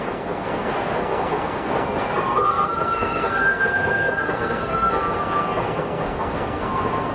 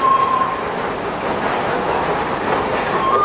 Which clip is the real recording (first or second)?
second